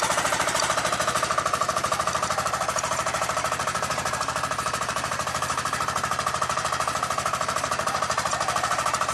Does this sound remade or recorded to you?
remade